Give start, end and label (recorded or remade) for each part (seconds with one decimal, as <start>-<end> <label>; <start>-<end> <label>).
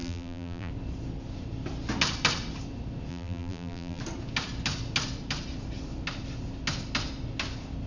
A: 0.0-0.7 remade; 0.7-3.1 recorded; 3.1-4.0 remade; 4.0-7.9 recorded